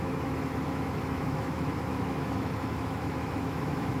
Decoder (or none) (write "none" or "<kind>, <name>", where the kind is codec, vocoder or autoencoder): autoencoder, DAC-VAE